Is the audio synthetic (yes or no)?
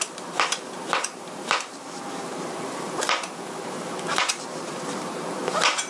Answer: yes